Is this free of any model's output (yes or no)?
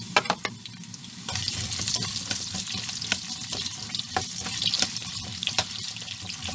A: yes